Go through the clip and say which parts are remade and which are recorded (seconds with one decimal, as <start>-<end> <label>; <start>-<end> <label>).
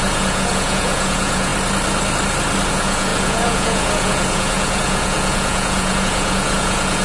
0.0-1.5 remade; 1.5-2.7 recorded; 2.7-7.0 remade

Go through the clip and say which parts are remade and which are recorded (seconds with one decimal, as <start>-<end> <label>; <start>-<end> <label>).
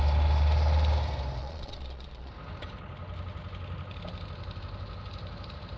0.0-1.4 recorded; 1.4-2.3 remade; 2.3-5.8 recorded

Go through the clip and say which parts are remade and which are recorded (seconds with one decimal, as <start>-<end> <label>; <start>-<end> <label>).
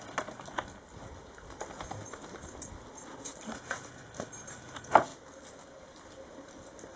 0.0-7.0 recorded